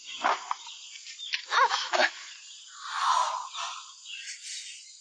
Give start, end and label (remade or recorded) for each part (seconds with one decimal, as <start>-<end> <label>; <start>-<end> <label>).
0.0-1.4 recorded; 1.4-2.3 remade; 2.3-5.0 recorded